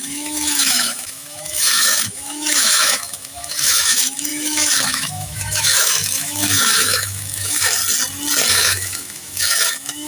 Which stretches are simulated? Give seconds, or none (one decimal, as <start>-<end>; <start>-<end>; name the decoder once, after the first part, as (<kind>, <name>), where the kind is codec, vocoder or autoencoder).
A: 0.0-7.8 (autoencoder, DAC-VAE); 8.5-10.1